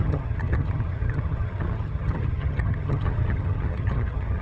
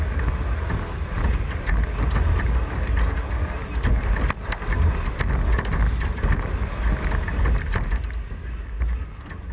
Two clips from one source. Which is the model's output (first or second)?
first